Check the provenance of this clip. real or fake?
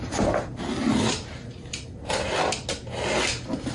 real